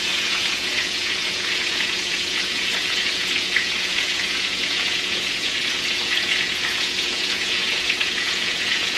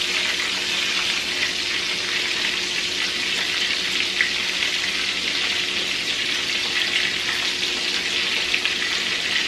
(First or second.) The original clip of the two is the second